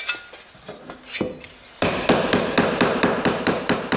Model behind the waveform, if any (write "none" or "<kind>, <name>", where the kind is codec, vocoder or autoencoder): none